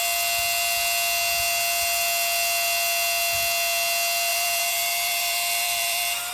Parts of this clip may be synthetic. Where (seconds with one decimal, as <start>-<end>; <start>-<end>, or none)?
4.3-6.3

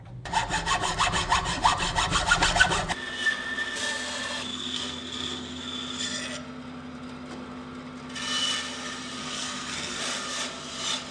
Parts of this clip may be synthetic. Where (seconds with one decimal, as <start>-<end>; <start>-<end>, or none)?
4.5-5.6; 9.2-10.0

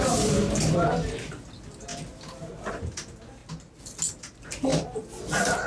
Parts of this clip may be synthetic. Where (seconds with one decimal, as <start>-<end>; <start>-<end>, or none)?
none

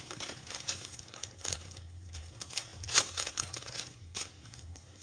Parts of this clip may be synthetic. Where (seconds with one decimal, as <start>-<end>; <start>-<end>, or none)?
0.0-5.0

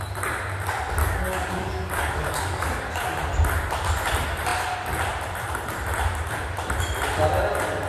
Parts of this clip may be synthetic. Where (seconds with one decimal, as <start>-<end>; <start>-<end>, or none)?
1.0-3.2